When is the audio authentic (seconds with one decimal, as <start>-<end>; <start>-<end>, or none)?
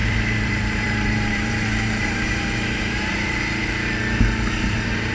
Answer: 3.6-4.6